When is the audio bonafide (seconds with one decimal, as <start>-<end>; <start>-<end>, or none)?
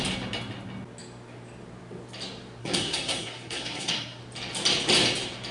0.0-2.6; 4.2-5.5